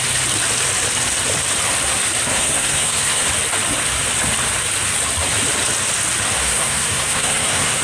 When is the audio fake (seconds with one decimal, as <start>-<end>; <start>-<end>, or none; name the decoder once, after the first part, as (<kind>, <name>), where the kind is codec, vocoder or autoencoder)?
2.3-3.3 (codec, SNAC); 6.4-7.8